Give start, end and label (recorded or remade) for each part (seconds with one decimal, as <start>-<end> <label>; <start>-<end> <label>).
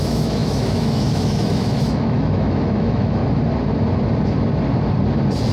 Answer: 0.0-3.2 remade; 3.2-5.5 recorded